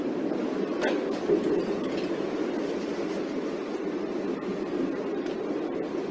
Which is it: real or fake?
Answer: real